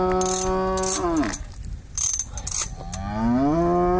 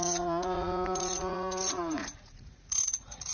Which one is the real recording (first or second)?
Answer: first